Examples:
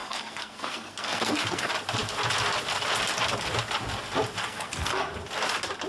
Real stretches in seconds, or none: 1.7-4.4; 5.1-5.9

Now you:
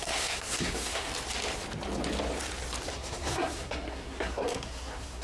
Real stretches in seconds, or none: 1.1-2.9

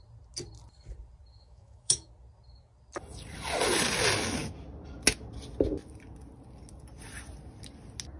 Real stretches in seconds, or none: 0.0-1.3; 2.1-8.2